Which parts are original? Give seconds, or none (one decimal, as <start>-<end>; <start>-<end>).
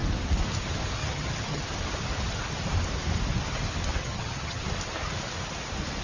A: 0.0-1.0; 1.6-4.0; 4.6-6.0